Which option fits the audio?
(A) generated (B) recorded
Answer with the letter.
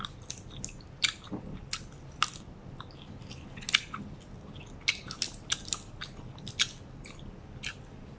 B